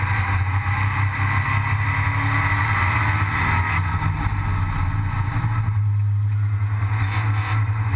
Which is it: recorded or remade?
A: recorded